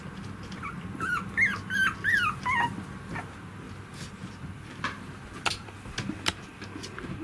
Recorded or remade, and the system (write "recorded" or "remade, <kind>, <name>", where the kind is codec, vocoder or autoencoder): recorded